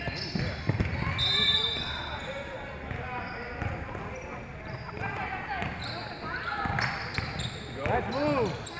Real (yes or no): yes